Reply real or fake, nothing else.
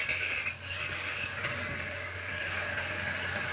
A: fake